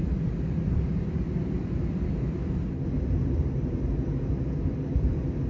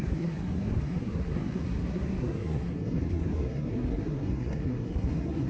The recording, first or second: first